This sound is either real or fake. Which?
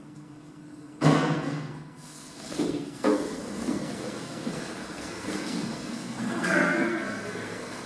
fake